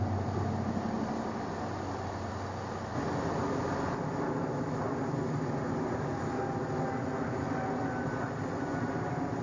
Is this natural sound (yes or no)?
yes